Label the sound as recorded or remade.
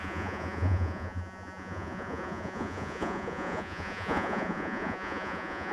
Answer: remade